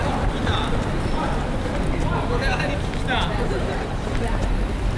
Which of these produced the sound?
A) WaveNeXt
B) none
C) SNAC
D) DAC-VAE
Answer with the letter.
B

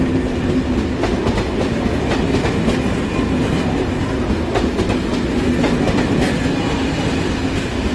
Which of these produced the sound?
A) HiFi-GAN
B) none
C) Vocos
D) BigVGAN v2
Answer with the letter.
B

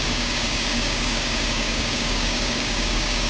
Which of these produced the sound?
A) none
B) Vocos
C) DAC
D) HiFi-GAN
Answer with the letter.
C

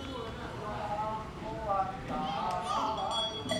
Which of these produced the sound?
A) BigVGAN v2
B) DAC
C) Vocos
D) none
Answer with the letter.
D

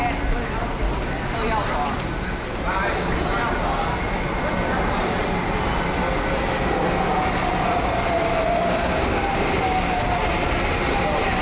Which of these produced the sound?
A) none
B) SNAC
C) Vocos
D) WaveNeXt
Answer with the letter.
A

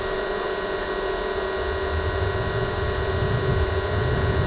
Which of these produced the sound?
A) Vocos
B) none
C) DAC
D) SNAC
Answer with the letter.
B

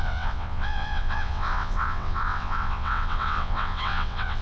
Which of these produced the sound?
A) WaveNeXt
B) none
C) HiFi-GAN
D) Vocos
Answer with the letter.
A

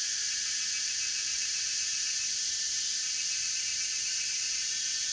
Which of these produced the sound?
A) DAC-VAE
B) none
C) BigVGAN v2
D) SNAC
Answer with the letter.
B